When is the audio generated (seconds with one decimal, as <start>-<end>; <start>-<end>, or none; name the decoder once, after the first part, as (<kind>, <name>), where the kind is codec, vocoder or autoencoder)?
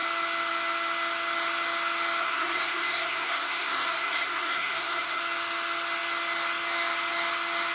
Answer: 2.2-5.2 (codec, SNAC)